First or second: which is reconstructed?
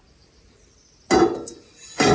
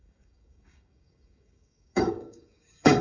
second